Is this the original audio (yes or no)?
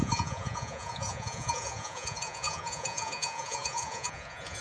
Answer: no